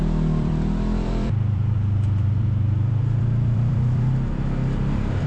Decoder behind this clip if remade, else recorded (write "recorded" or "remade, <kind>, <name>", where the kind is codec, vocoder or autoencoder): remade, vocoder, BigVGAN v2